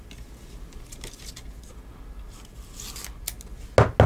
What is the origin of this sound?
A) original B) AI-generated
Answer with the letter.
A